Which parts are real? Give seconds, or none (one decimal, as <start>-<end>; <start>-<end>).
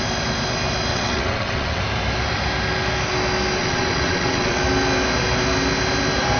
0.0-0.9; 1.8-3.6; 4.6-6.4